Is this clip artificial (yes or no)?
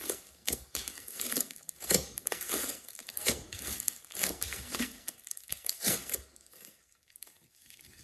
yes